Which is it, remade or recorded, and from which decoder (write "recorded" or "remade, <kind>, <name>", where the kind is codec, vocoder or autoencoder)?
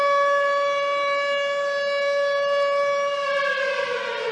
recorded